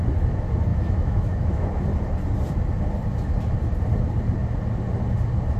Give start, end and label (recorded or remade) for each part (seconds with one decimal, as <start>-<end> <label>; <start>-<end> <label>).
0.0-0.7 recorded; 0.7-1.8 remade; 1.8-5.6 recorded